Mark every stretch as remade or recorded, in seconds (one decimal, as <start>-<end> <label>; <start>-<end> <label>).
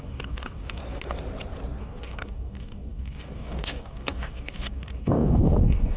0.0-0.8 remade; 0.8-1.8 recorded; 1.8-6.0 remade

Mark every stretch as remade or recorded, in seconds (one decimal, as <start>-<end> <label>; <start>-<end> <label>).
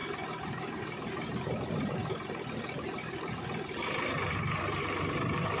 0.0-5.6 remade